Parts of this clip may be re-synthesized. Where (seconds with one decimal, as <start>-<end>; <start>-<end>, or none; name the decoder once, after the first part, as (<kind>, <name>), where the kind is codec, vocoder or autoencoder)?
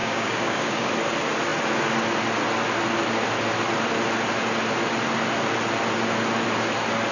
0.0-0.9 (codec, DAC)